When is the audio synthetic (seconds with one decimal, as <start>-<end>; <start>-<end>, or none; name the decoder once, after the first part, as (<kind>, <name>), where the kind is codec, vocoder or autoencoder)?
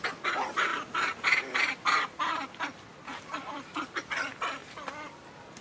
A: 0.7-4.1 (vocoder, BigVGAN v2); 4.6-5.6